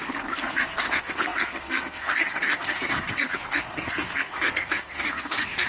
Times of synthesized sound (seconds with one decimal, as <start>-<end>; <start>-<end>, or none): 0.0-5.7